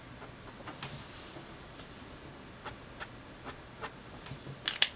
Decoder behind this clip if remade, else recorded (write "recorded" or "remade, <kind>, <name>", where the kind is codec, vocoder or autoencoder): recorded